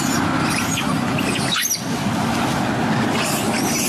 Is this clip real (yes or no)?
yes